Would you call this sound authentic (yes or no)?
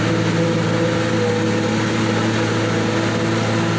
yes